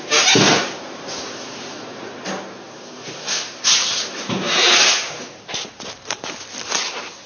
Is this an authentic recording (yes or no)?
yes